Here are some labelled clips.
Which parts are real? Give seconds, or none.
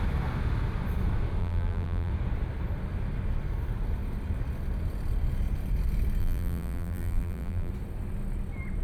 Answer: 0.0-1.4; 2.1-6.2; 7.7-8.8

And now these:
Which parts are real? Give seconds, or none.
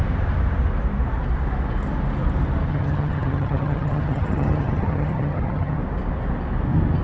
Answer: 0.0-2.7; 5.8-7.0